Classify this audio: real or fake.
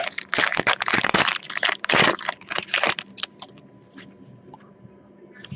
fake